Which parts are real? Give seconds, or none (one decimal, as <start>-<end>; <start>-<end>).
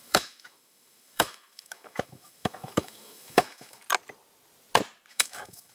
3.8-5.1